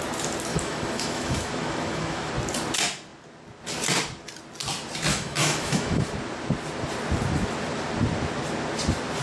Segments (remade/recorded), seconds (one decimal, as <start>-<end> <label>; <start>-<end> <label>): 0.0-0.5 recorded; 0.5-2.3 remade; 2.3-5.1 recorded; 5.1-6.0 remade; 6.0-9.2 recorded